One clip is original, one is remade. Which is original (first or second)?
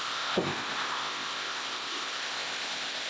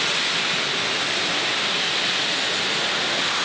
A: second